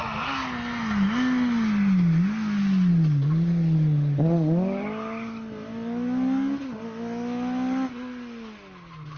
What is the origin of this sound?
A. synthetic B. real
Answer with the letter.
B